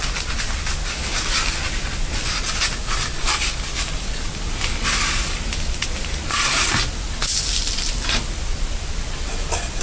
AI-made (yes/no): no